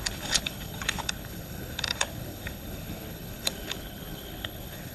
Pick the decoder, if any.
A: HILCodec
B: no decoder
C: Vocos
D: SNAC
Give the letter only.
A